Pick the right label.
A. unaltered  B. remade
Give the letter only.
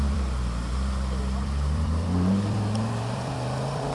B